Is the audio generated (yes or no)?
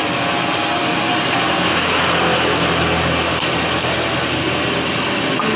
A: no